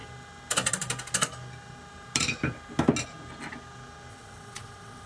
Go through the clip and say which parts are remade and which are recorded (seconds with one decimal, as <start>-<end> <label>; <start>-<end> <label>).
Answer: 0.0-4.1 recorded; 4.1-5.1 remade